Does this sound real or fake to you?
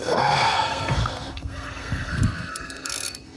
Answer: fake